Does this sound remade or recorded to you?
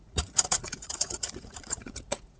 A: remade